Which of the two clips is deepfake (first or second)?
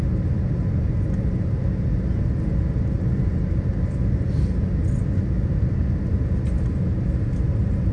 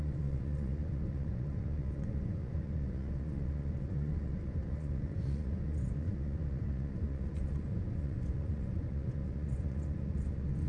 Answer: second